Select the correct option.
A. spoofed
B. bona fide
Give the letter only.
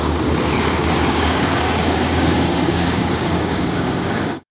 A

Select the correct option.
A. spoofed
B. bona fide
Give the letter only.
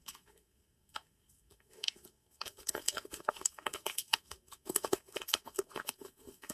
A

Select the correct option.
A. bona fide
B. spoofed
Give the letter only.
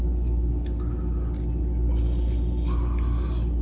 A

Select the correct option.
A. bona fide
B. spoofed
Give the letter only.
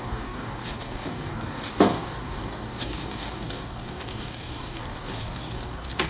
B